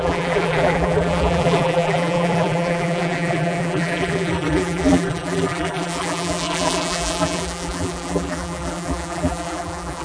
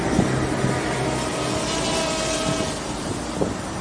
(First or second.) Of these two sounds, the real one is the second